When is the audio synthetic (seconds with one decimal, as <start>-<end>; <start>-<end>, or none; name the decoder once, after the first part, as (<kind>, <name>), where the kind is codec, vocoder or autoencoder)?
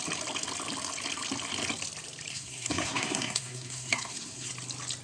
2.3-4.5 (codec, SNAC)